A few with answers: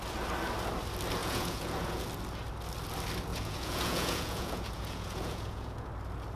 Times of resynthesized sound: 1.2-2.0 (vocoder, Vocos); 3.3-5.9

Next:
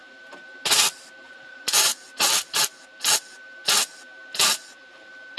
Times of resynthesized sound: 1.3-1.9 (vocoder, Vocos)